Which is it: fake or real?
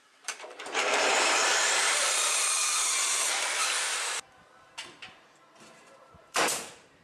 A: fake